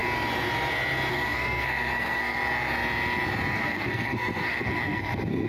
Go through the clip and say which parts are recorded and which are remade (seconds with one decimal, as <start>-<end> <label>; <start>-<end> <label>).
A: 0.0-1.1 recorded; 1.1-2.4 remade; 2.4-3.5 recorded; 3.5-5.5 remade